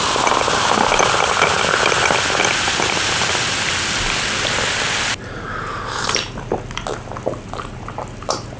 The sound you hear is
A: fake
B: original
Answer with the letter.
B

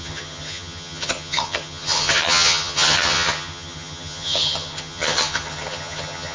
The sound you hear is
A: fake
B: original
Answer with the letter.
A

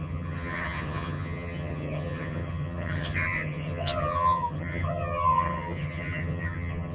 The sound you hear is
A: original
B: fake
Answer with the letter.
B